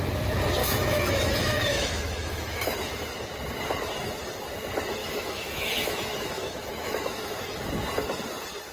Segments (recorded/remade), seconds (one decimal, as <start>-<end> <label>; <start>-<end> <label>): 0.0-0.6 recorded; 0.6-2.9 remade; 2.9-5.0 recorded; 5.0-7.6 remade; 7.6-8.7 recorded